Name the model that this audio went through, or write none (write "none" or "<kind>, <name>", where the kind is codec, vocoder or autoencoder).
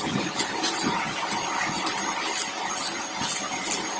none